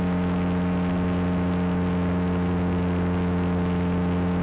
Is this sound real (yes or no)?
yes